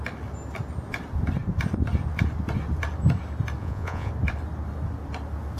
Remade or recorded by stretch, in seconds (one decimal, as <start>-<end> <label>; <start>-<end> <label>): 0.0-3.6 recorded; 3.6-4.1 remade; 4.1-5.6 recorded